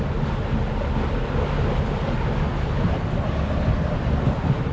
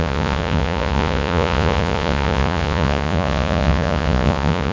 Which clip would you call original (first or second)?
first